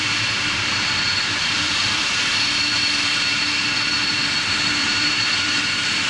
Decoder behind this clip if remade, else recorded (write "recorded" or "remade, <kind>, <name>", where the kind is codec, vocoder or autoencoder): remade, vocoder, BigVGAN v2